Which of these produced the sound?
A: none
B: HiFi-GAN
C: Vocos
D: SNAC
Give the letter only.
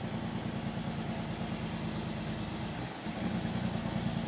A